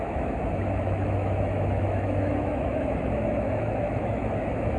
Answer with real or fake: fake